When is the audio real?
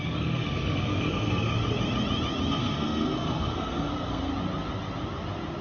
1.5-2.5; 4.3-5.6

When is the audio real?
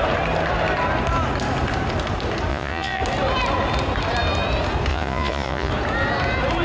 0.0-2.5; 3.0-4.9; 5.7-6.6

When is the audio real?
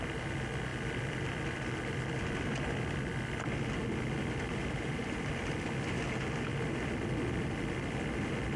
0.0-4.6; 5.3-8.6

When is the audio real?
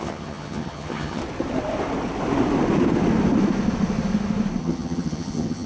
1.2-4.6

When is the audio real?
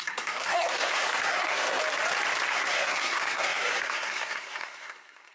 1.8-2.5